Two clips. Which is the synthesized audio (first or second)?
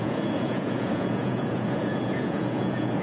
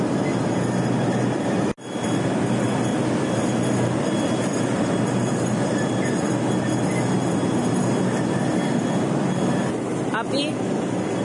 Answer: first